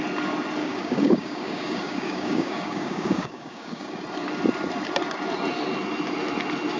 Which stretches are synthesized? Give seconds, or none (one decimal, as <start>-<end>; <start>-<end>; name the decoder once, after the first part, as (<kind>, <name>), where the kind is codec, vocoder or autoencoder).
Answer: 0.6-4.0 (codec, DAC)